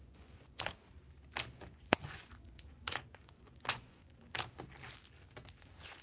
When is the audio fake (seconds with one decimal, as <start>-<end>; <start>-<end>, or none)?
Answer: 0.0-0.6; 1.7-4.3

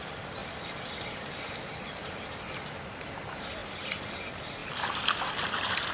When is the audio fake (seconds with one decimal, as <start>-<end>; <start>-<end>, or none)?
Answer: 0.4-3.0; 3.6-4.1; 4.6-5.9

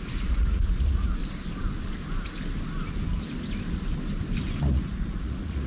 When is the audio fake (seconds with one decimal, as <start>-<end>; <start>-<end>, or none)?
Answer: 0.0-1.2; 4.6-5.7

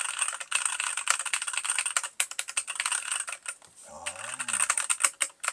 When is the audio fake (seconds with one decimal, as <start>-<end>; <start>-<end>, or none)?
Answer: none

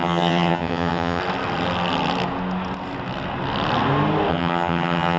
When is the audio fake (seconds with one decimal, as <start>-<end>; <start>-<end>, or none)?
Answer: 0.0-1.2; 4.3-5.2

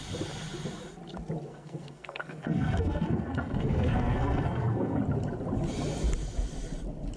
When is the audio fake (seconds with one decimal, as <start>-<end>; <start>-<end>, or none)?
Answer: 1.5-5.0